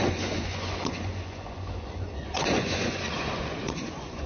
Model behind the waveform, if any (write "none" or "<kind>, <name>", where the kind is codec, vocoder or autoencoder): vocoder, Vocos